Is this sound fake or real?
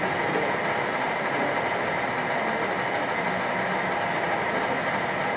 real